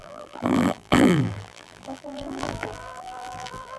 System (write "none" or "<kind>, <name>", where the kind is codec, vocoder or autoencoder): vocoder, BigVGAN v2